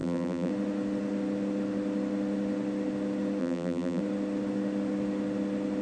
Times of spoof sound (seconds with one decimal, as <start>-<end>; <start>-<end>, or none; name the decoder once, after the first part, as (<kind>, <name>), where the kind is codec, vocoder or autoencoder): 0.0-0.5 (vocoder, BigVGAN v2); 3.4-4.0